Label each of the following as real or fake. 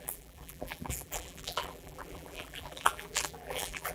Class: fake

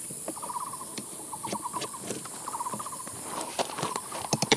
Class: fake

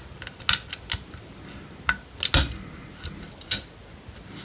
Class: real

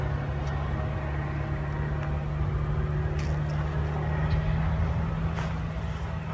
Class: real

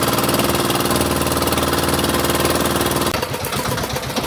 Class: real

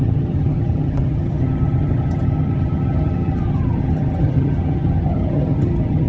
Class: fake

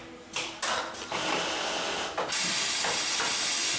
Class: real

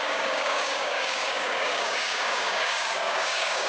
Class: fake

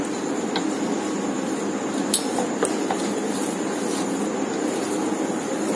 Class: real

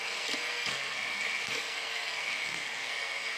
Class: fake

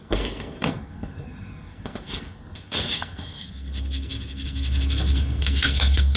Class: fake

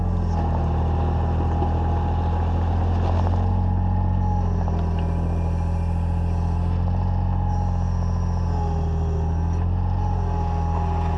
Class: real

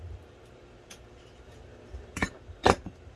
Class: fake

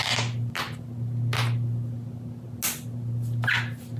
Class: real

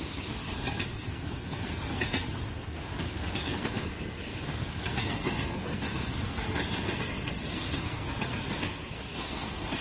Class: fake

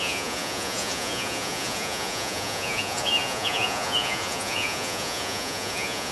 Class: fake